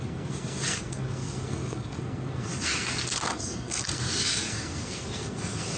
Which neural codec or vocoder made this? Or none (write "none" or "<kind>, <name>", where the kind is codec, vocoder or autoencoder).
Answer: codec, SNAC